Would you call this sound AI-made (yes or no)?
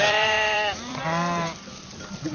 yes